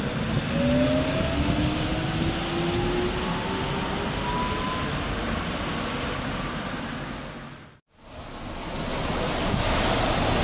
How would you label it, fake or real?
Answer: real